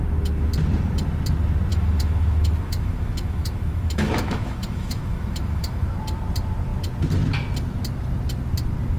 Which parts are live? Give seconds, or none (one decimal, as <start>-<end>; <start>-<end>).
0.0-1.7; 5.8-9.0